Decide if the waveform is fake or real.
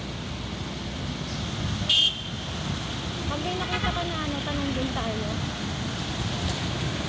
real